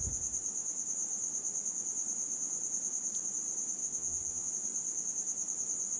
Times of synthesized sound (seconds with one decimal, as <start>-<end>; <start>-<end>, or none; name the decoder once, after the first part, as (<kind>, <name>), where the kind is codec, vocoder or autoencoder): 3.8-4.5 (vocoder, Vocos)